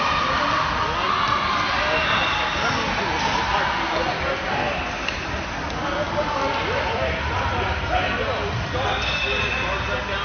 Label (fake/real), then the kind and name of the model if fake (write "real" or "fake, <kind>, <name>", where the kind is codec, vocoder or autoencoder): real